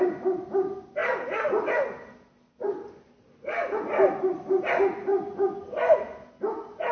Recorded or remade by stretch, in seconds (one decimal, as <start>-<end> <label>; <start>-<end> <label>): 0.0-6.9 recorded

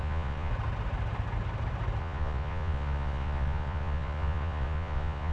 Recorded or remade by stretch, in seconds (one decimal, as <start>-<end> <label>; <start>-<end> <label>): 0.0-0.5 remade; 0.5-2.0 recorded; 2.0-5.3 remade

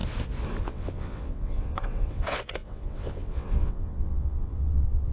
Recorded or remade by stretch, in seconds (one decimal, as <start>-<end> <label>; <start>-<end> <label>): 0.0-0.6 recorded; 0.6-5.1 remade